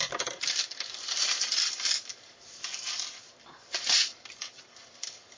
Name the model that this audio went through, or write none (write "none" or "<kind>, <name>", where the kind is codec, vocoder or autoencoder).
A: vocoder, BigVGAN v2